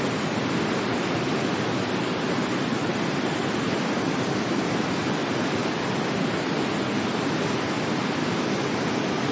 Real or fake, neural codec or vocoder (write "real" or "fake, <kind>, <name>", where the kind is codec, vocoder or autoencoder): real